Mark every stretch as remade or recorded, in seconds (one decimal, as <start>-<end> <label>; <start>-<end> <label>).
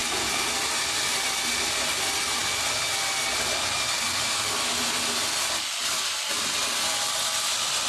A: 0.0-7.9 recorded